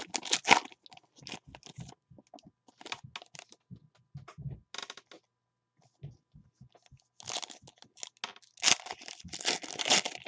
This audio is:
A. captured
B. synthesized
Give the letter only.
A